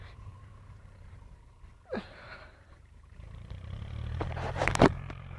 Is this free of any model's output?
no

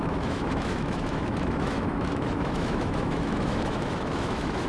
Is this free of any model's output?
no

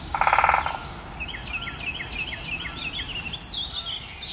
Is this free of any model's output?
yes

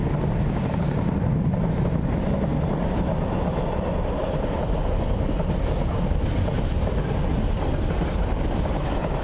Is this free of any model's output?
yes